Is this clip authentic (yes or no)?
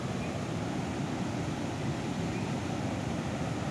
yes